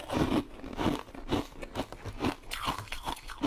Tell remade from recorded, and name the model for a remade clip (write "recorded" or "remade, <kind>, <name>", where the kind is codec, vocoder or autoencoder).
recorded